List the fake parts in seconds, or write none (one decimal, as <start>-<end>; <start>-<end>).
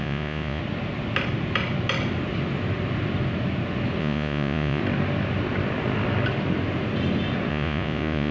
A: 0.0-0.6; 4.0-4.8; 7.5-8.3